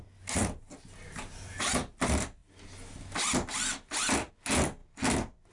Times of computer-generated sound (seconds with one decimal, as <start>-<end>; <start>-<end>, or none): none